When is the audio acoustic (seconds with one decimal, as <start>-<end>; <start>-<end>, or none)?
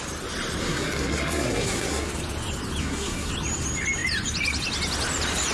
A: 0.0-0.6; 2.1-2.8; 3.3-5.5